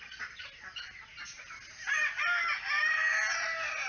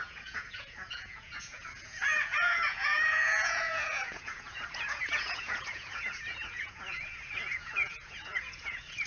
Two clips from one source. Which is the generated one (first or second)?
second